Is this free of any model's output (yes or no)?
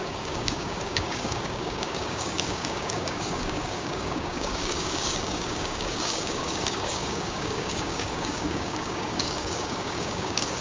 no